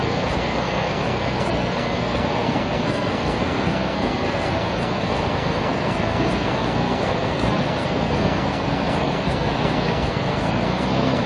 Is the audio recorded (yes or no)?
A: no